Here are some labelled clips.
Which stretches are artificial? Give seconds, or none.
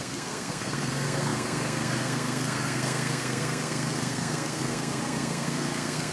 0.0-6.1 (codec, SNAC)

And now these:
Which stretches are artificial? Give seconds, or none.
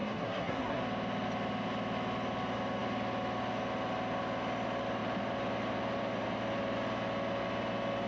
0.0-0.8 (codec, SNAC)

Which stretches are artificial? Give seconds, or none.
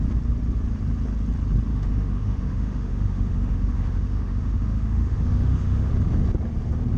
1.7-5.9 (autoencoder, DAC-VAE)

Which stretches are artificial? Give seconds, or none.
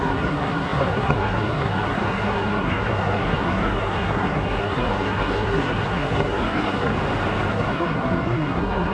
0.0-6.9 (codec, SNAC); 7.5-8.9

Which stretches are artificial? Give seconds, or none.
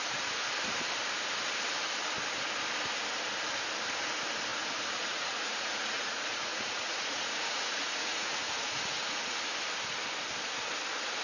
4.5-9.4 (vocoder, Vocos)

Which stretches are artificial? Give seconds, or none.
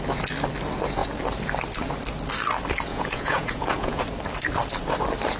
2.9-4.0 (vocoder, Vocos)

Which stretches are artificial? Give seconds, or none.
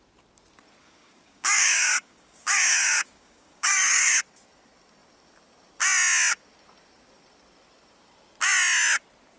0.8-4.2 (codec, DAC)